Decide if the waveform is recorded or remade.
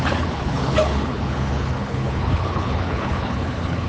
remade